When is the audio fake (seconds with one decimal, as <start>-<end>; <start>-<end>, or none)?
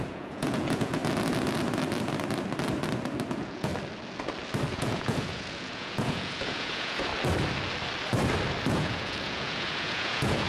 0.0-1.0; 3.3-3.7; 4.7-7.1; 8.7-10.5